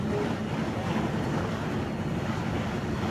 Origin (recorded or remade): recorded